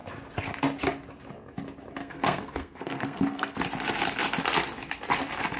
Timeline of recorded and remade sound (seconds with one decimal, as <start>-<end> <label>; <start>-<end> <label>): 0.0-2.0 recorded; 2.0-3.6 remade; 3.6-5.6 recorded